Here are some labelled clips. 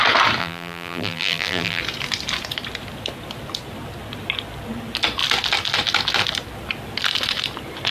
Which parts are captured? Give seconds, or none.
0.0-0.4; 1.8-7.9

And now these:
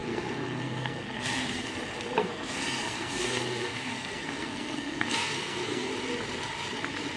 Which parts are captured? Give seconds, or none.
1.8-2.2; 5.9-7.2

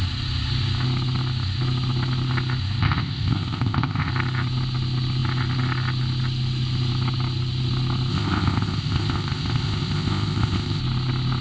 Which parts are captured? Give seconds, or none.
0.0-2.8; 4.1-8.1; 10.8-11.4

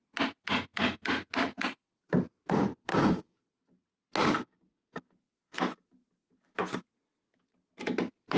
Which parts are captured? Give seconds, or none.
0.0-2.9; 3.4-4.2; 5.4-8.4

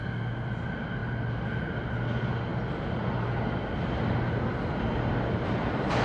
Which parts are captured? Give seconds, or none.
0.0-6.0

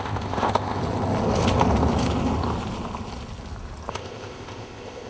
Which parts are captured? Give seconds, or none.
0.8-3.9

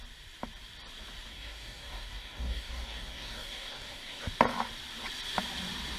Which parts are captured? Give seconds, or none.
0.0-1.3; 4.2-6.0

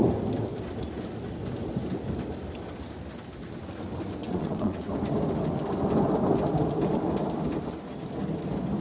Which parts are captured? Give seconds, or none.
0.0-4.2; 4.9-8.8